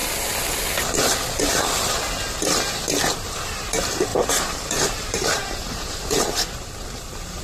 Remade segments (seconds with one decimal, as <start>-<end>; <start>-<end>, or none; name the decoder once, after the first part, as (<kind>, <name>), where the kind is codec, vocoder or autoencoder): 3.3-7.4 (vocoder, BigVGAN v2)